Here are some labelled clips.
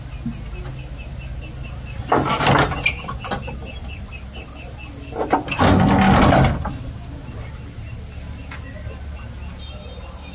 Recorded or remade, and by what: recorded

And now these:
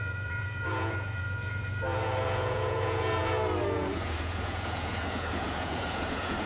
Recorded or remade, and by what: remade, vocoder, Vocos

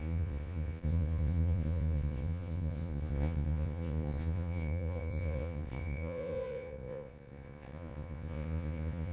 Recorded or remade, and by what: remade, vocoder, Vocos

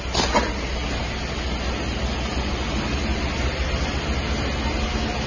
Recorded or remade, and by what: recorded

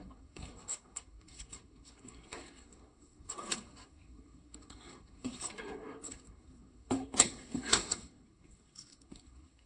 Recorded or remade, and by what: remade, codec, SNAC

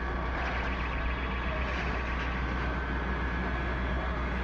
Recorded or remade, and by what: recorded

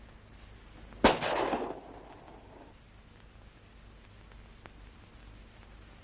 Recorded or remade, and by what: recorded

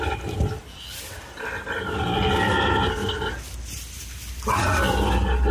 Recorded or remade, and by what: recorded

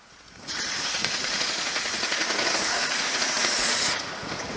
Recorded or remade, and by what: remade, vocoder, Vocos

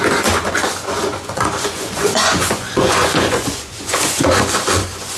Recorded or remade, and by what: remade, vocoder, Vocos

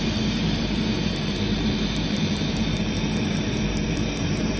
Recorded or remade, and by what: remade, vocoder, BigVGAN v2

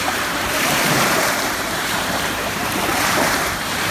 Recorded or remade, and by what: remade, vocoder, BigVGAN v2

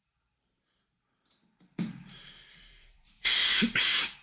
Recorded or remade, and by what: remade, vocoder, BigVGAN v2